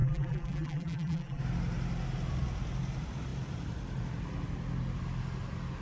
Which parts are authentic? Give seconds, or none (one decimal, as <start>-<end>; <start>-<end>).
1.4-5.8